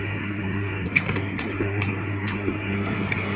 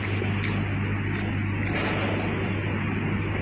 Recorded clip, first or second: second